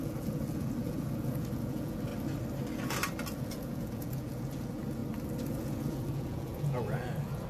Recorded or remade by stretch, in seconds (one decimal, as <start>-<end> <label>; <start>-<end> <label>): 0.0-2.1 remade; 2.1-3.3 recorded; 3.3-5.0 remade; 5.0-5.5 recorded; 5.5-7.5 remade